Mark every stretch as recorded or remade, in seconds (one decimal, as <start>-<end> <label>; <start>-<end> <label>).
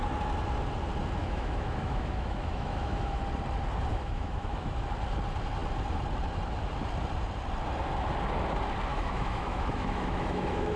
0.0-1.2 recorded; 1.2-3.2 remade; 3.2-3.9 recorded; 3.9-4.7 remade; 4.7-8.9 recorded; 8.9-10.8 remade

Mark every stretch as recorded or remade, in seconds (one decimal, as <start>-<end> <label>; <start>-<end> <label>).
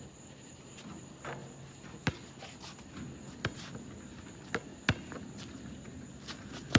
0.0-6.8 recorded